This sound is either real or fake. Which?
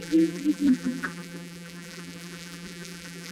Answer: fake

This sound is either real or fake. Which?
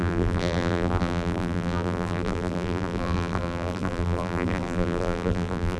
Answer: fake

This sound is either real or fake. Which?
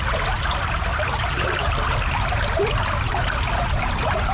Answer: real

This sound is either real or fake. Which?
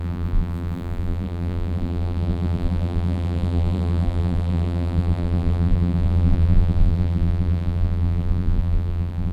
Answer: fake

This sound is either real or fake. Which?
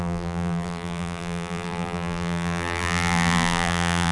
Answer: fake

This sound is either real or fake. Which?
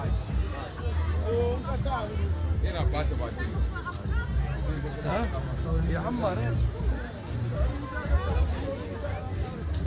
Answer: real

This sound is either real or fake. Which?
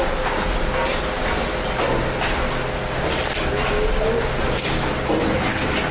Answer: real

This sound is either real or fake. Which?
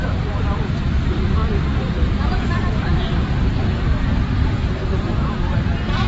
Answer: fake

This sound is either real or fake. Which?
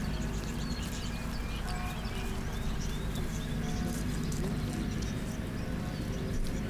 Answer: real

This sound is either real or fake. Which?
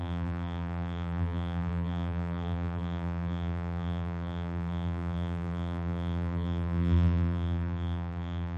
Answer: fake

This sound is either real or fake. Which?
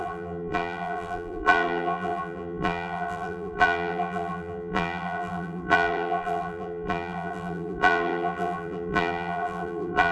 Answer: fake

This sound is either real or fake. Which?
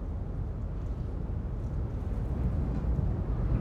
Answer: real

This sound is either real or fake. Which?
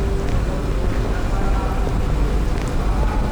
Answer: real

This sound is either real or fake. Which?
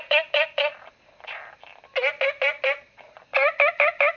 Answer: real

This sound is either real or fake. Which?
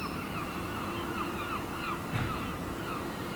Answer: real